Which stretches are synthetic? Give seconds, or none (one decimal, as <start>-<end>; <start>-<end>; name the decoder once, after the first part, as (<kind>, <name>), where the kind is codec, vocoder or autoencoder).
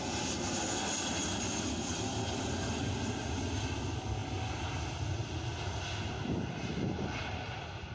none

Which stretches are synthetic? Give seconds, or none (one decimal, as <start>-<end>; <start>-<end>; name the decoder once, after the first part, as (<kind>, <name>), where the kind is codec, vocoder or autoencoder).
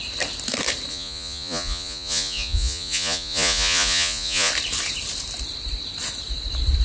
0.9-4.5 (vocoder, Vocos)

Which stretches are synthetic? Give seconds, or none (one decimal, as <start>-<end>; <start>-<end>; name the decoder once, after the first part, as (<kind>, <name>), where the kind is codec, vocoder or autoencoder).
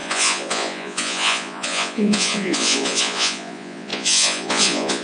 0.0-5.0 (vocoder, Vocos)